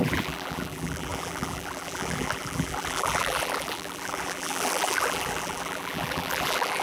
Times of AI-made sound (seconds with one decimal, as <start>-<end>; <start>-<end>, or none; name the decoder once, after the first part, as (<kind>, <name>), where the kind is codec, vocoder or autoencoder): 0.0-6.8 (vocoder, BigVGAN v2)